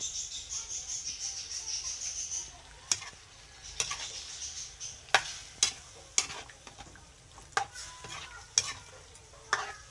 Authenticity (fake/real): real